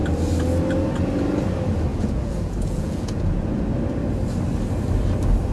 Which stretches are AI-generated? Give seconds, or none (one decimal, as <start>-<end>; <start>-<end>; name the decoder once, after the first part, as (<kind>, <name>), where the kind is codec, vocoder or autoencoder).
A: 1.9-3.6 (vocoder, Vocos)